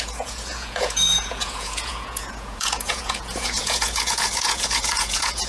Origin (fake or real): fake